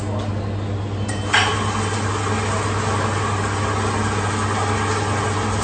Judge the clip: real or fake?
real